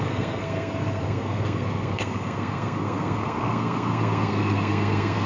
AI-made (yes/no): yes